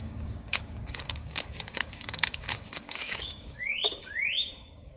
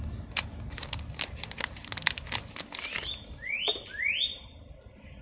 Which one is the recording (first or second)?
second